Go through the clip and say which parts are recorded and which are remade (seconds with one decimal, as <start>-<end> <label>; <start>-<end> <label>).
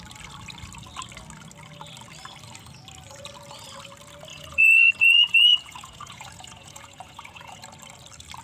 0.0-4.3 recorded; 4.3-7.6 remade; 7.6-8.4 recorded